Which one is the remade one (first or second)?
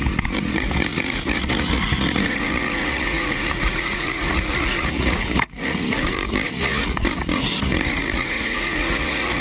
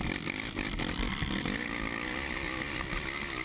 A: first